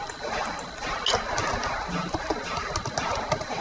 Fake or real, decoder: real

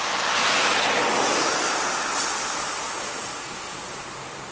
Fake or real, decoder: real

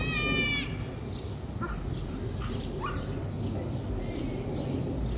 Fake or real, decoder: real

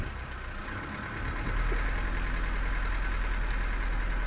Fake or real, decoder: real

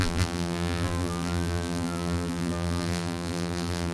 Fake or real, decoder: fake, vocoder, BigVGAN v2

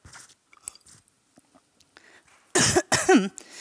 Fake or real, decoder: real